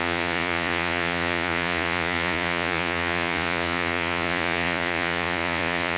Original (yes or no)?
no